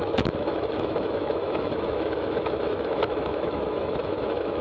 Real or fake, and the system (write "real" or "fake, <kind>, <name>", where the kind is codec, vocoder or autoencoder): fake, autoencoder, DAC-VAE